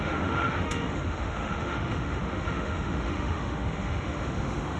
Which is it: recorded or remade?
remade